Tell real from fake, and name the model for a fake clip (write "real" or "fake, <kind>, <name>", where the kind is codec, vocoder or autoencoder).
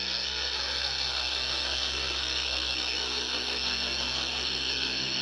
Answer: fake, codec, SNAC